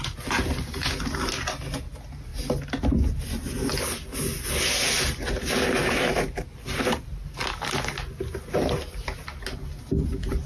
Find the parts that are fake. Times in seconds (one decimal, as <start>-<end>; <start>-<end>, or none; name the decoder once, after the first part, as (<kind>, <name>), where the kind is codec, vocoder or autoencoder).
none